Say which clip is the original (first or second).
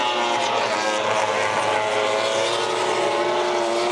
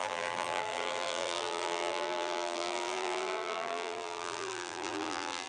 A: first